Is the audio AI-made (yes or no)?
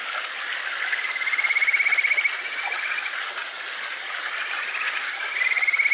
no